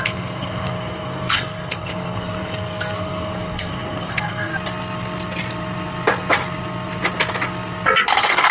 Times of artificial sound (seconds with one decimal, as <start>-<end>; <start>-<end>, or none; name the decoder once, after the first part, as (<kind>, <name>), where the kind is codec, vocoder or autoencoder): 0.0-4.5 (codec, SNAC); 8.0-8.5